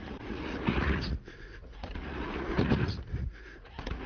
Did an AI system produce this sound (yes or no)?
yes